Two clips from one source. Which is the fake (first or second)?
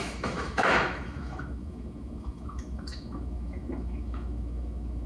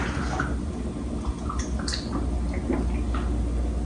first